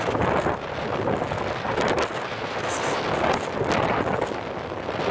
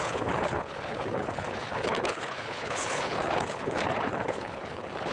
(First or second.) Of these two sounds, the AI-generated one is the second